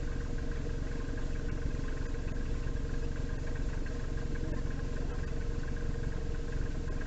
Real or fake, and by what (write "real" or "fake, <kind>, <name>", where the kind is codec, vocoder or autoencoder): real